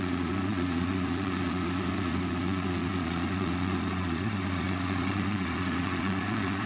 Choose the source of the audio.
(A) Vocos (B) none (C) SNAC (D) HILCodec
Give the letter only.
A